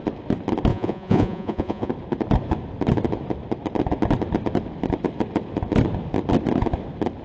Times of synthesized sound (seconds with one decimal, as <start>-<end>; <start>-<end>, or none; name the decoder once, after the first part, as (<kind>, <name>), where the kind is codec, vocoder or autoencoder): 0.7-1.9 (vocoder, Vocos)